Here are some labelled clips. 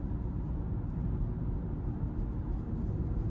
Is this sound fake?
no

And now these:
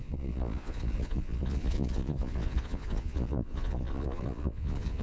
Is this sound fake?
yes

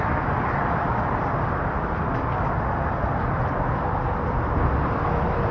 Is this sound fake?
no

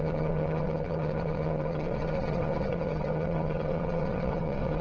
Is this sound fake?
yes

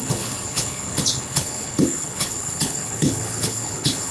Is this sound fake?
yes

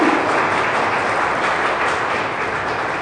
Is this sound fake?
no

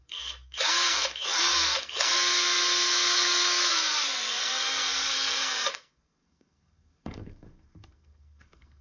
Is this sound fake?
yes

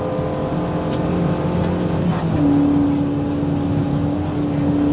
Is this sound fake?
no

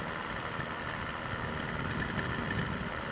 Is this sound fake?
no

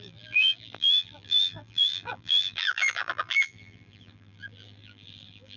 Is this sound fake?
yes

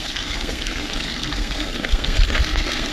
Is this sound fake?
yes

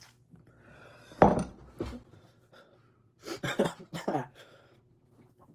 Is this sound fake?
no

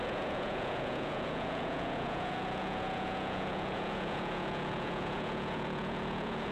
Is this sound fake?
yes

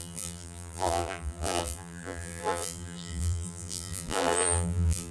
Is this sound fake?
yes